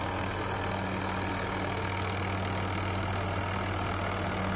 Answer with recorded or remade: recorded